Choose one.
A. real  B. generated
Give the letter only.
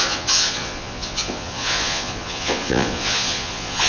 B